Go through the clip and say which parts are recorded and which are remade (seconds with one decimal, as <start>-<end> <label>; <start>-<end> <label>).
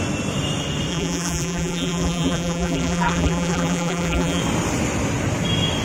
0.0-0.9 recorded; 0.9-4.4 remade; 4.4-5.8 recorded